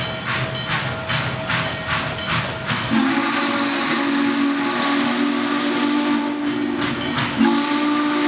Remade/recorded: recorded